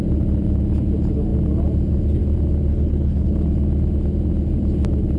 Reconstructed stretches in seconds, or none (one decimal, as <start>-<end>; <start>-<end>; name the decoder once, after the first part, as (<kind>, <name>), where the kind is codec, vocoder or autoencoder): 2.7-3.3 (codec, HILCodec)